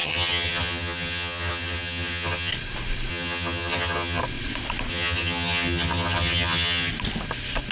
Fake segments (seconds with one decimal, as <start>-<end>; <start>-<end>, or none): 0.0-2.5; 3.1-4.2; 4.9-6.9

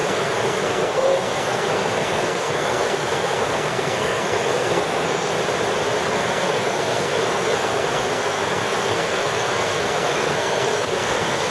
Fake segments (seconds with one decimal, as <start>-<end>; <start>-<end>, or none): 0.0-5.3; 6.1-11.5

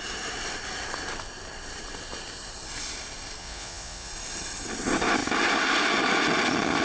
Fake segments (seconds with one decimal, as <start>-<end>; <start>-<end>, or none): 3.4-4.1